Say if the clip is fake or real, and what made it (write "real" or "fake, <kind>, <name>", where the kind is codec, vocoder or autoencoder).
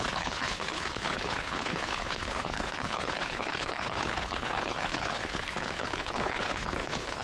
fake, codec, HILCodec